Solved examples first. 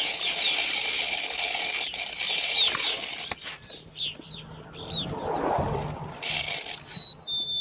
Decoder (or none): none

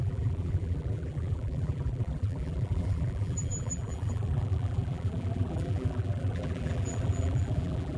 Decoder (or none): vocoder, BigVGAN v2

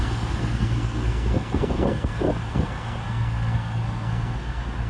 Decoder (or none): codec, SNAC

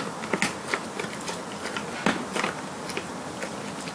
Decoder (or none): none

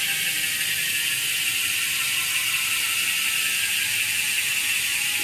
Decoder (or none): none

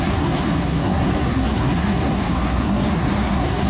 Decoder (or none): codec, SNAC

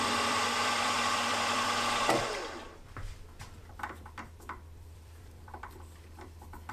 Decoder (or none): vocoder, BigVGAN v2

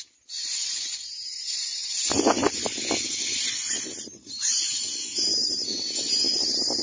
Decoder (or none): none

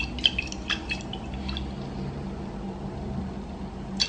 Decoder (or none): none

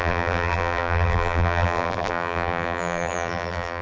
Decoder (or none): vocoder, BigVGAN v2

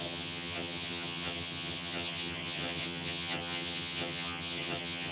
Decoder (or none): vocoder, HiFi-GAN